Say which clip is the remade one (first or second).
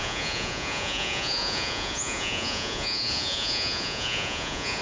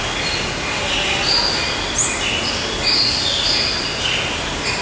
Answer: first